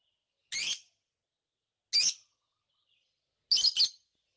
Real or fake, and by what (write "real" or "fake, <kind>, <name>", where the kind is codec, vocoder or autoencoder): real